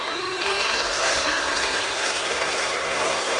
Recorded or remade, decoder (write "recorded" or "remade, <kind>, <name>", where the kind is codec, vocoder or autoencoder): remade, codec, SNAC